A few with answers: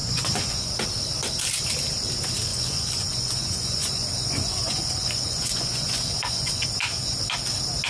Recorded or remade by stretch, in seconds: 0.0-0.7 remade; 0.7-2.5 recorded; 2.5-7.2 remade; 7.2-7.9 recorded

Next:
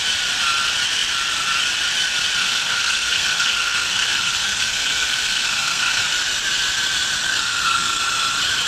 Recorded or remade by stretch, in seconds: 0.0-2.4 recorded; 2.4-6.0 remade; 6.0-7.3 recorded; 7.3-8.0 remade; 8.0-8.7 recorded